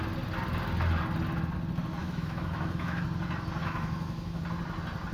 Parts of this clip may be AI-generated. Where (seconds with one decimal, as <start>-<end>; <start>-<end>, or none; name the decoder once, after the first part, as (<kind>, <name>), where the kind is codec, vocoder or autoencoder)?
2.0-3.0 (autoencoder, DAC-VAE); 3.6-4.4